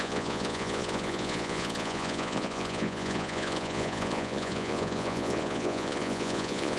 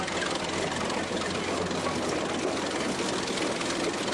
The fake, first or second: first